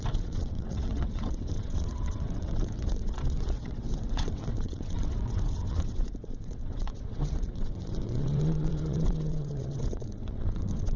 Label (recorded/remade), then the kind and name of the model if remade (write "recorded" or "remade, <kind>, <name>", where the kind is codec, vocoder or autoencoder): remade, vocoder, WaveNeXt